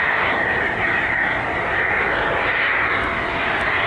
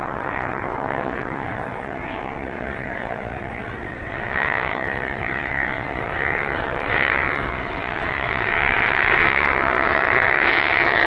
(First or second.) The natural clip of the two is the first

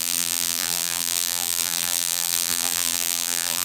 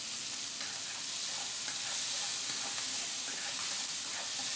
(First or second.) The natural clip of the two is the second